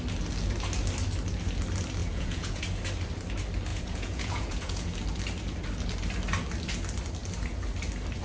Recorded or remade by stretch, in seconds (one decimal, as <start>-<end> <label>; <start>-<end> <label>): 0.0-2.0 recorded; 2.0-2.6 remade; 2.6-3.7 recorded; 3.7-4.9 remade; 4.9-8.2 recorded